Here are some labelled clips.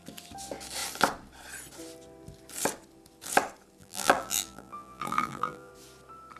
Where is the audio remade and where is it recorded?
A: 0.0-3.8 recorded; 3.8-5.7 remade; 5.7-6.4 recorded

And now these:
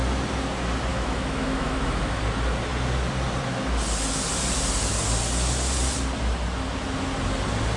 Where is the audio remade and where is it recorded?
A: 0.0-0.9 recorded; 0.9-2.2 remade; 2.2-7.8 recorded

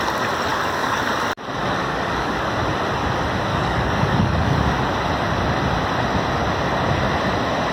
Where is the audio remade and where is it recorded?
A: 0.0-0.5 recorded; 0.5-1.0 remade; 1.0-1.6 recorded; 1.6-2.5 remade; 2.5-3.5 recorded; 3.5-4.8 remade; 4.8-7.7 recorded

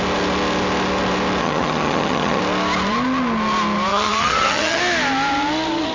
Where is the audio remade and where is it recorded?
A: 0.0-1.4 recorded; 1.4-2.4 remade; 2.4-3.9 recorded; 3.9-4.8 remade; 4.8-5.9 recorded

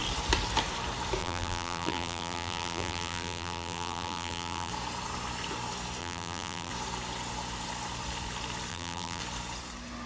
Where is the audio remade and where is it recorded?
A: 0.0-1.2 recorded; 1.2-4.7 remade; 4.7-6.0 recorded; 6.0-6.7 remade; 6.7-8.7 recorded; 8.7-9.2 remade; 9.2-10.1 recorded

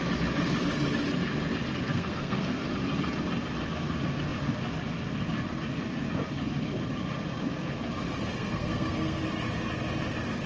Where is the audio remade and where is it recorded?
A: 0.0-1.9 recorded; 1.9-2.6 remade; 2.6-8.3 recorded; 8.3-9.2 remade; 9.2-10.5 recorded

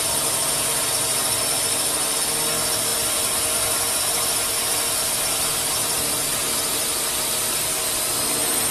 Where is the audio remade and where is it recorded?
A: 0.0-8.7 recorded